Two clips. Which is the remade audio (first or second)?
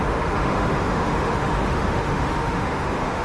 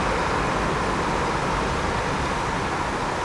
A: first